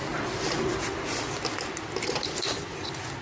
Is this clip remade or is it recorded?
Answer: recorded